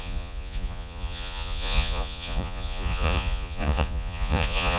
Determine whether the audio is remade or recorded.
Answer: remade